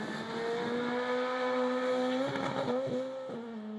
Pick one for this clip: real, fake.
real